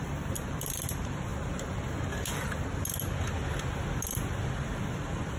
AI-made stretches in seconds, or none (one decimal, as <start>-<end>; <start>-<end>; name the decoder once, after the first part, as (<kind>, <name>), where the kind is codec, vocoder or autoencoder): 0.0-1.3 (vocoder, BigVGAN v2); 4.5-5.4